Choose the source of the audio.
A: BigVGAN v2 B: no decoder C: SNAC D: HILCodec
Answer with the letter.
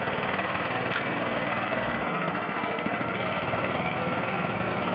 C